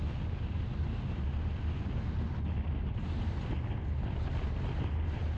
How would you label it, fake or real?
real